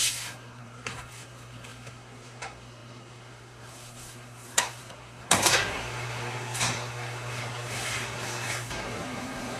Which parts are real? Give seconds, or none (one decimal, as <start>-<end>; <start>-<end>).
none